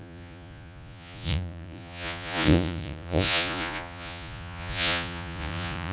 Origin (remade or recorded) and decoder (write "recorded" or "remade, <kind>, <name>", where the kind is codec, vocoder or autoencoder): remade, vocoder, Vocos